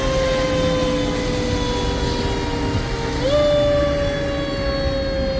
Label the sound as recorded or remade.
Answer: recorded